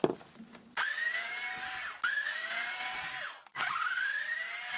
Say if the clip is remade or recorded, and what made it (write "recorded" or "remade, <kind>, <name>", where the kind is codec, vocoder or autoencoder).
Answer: recorded